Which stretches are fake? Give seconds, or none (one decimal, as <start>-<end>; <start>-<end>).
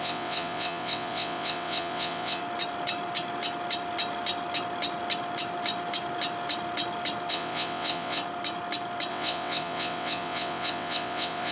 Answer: 0.0-2.4; 7.3-8.2; 9.1-11.5